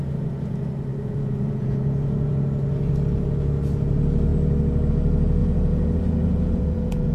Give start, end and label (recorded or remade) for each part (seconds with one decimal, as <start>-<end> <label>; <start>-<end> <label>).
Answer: 0.0-0.9 recorded; 0.9-2.3 remade; 2.3-5.4 recorded; 5.4-7.1 remade